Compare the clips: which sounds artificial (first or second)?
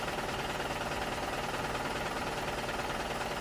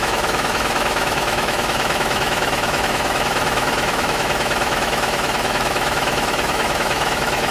second